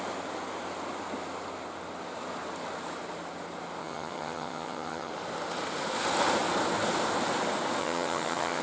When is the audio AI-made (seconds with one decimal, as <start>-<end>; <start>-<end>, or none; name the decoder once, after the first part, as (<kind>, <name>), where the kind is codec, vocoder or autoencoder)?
3.8-5.1 (vocoder, HiFi-GAN); 7.8-8.6